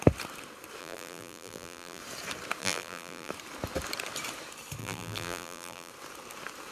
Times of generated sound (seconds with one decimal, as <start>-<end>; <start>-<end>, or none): 0.8-2.0; 2.6-3.3; 4.8-5.9